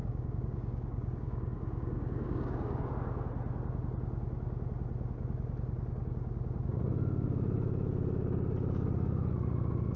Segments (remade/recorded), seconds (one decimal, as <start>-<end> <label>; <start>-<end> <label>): 0.0-2.9 remade; 2.9-10.0 recorded